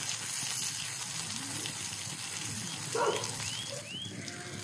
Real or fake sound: real